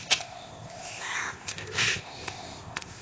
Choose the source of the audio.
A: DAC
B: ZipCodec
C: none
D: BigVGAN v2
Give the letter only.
B